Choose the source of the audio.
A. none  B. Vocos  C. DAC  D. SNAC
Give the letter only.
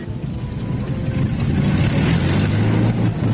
A